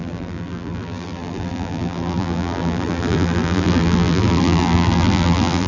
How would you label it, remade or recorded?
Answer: remade